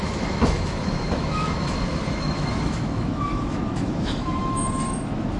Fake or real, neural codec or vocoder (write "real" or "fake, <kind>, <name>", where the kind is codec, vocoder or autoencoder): fake, autoencoder, DAC-VAE